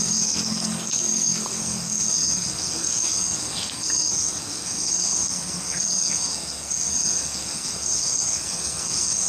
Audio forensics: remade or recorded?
remade